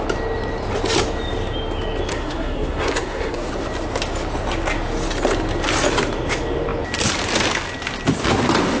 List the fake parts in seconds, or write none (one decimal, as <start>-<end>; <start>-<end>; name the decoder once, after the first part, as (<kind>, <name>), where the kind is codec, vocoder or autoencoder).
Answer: 2.1-3.5 (codec, SNAC)